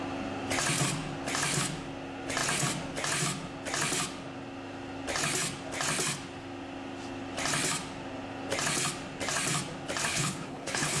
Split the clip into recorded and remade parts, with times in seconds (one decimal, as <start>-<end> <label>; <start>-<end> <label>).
0.0-10.1 recorded; 10.1-11.0 remade